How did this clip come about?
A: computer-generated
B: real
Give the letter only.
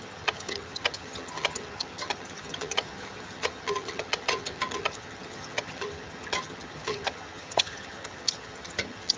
A